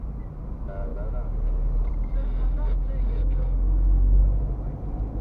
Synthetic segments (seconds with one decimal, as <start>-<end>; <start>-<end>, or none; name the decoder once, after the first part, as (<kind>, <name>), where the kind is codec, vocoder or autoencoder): 3.2-4.2 (codec, SNAC)